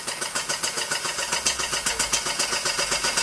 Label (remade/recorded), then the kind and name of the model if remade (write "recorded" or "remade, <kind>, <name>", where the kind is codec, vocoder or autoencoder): remade, vocoder, Vocos